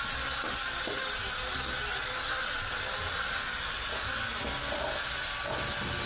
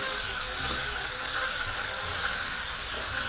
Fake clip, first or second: second